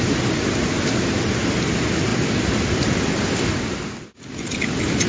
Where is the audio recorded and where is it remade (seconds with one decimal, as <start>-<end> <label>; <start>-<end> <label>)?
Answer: 0.0-5.1 recorded